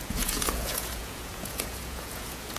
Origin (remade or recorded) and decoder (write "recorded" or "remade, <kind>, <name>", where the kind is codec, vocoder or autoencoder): remade, vocoder, Vocos